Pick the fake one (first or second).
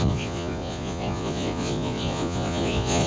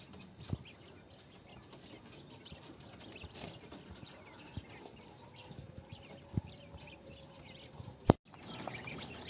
first